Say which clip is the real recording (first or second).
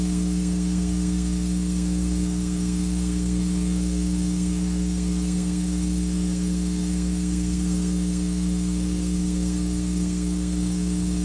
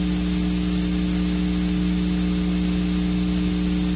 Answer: second